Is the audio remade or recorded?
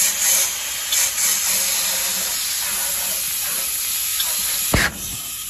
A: recorded